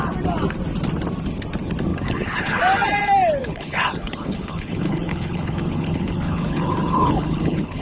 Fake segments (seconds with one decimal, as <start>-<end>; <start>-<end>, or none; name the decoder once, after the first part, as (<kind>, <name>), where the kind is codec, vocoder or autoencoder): 1.9-2.6 (codec, HILCodec); 3.4-7.8

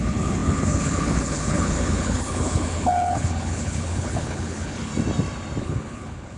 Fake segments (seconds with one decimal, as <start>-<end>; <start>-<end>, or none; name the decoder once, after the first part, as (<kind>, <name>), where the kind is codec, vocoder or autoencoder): 0.0-4.9 (codec, HILCodec); 5.6-6.4

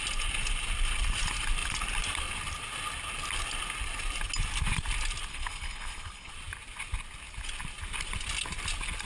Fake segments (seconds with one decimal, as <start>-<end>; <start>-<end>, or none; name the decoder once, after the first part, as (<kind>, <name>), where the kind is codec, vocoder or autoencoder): 5.3-6.3 (codec, HILCodec)